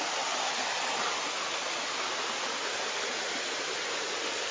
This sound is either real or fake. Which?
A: real